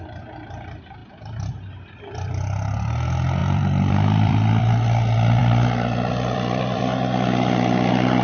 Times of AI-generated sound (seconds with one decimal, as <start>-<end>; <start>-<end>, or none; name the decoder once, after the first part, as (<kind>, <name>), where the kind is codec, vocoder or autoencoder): 3.4-4.6 (vocoder, BigVGAN v2); 5.4-6.8